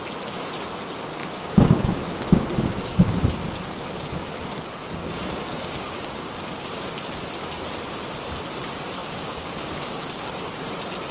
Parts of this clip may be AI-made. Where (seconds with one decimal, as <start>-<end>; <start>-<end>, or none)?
1.2-3.1; 5.0-6.9; 9.0-10.6